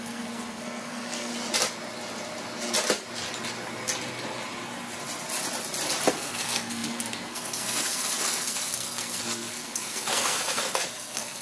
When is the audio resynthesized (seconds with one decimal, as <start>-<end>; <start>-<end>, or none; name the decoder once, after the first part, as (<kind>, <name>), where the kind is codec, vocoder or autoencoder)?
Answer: 0.0-1.3 (codec, SNAC); 6.1-11.4